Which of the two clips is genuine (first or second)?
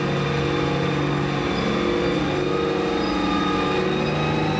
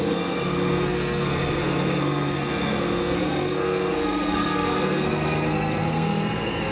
first